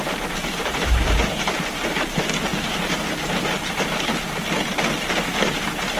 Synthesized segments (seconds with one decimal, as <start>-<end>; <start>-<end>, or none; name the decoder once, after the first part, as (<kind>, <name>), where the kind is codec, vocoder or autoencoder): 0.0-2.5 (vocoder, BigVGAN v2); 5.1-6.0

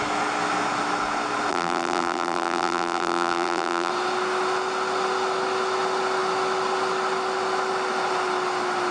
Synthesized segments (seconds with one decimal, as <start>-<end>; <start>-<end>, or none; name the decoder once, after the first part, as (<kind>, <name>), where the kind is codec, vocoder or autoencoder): 1.5-3.9 (vocoder, BigVGAN v2)

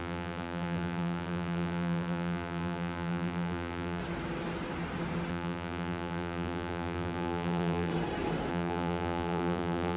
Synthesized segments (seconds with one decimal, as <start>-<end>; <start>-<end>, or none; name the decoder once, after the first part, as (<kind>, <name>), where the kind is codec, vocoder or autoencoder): 0.0-4.0 (vocoder, BigVGAN v2); 5.3-7.9; 8.5-10.0

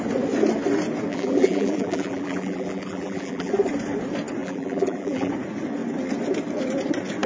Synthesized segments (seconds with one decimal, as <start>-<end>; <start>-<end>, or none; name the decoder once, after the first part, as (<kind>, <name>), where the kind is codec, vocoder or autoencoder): 1.1-3.5 (vocoder, BigVGAN v2); 4.4-5.3